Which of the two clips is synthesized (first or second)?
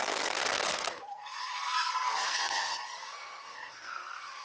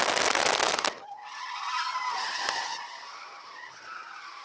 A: first